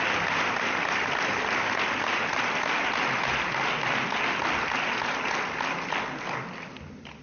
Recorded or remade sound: recorded